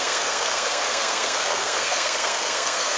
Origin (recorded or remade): remade